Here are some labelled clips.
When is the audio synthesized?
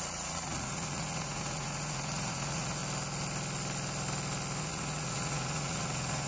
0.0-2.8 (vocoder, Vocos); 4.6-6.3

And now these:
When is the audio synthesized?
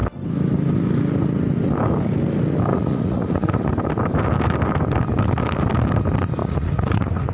2.7-3.7 (vocoder, Vocos); 6.4-7.3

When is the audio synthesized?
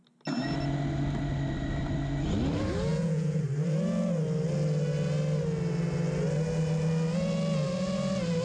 2.9-3.4 (vocoder, Vocos)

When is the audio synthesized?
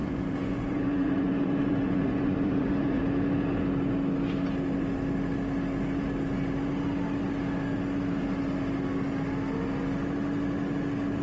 0.0-3.0 (vocoder, Vocos)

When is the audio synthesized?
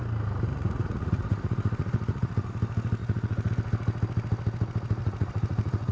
0.5-2.5 (vocoder, Vocos); 3.0-3.5; 5.0-5.9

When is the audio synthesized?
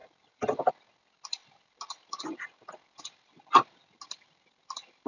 none